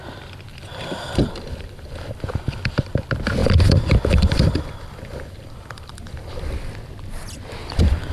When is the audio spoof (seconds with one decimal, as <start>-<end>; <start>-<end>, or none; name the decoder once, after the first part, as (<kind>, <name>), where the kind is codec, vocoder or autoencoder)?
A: 0.5-2.9 (vocoder, BigVGAN v2); 3.4-6.7; 7.6-8.1